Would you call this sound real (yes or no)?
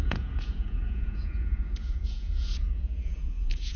no